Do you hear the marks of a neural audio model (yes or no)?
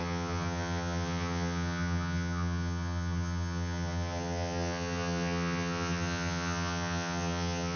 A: yes